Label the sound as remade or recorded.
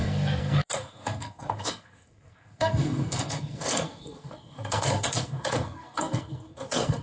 remade